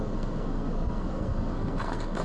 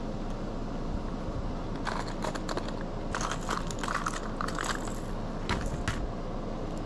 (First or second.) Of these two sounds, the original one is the second